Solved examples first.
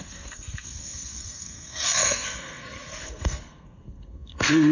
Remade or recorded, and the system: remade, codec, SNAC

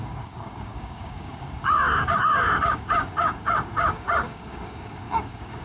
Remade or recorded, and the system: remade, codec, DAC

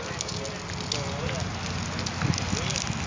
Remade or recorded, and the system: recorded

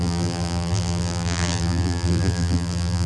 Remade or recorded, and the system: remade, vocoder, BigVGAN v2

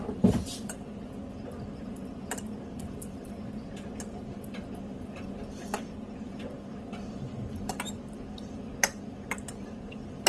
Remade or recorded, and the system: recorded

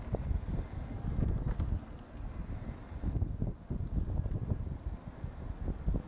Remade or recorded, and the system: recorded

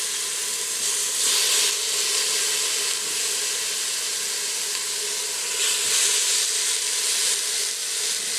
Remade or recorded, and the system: recorded